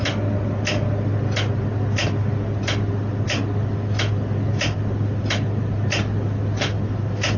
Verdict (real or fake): real